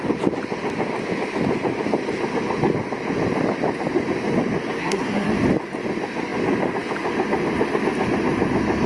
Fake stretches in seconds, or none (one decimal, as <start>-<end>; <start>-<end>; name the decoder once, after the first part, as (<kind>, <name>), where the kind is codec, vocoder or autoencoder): 4.8-5.3 (codec, SNAC)